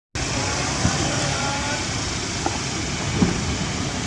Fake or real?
real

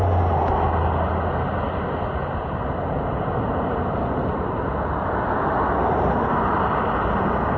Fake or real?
real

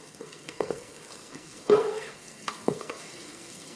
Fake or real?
fake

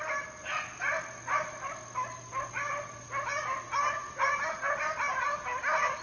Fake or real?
real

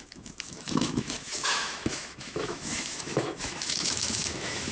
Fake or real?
fake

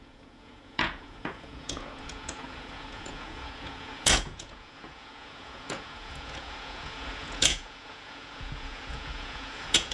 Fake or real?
fake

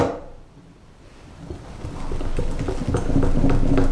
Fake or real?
real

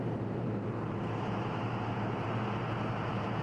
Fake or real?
fake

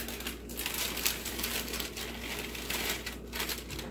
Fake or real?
real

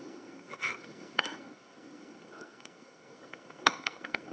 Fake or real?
fake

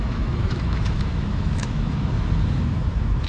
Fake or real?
fake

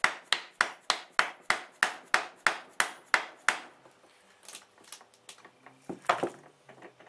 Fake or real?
real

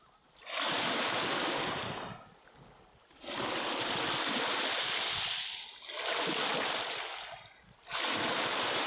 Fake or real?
real